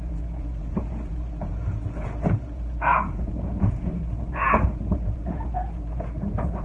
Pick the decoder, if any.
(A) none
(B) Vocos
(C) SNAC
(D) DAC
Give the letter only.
B